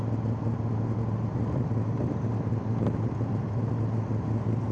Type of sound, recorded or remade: recorded